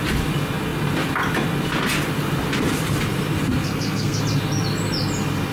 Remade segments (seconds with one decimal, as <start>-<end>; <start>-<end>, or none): 3.6-4.2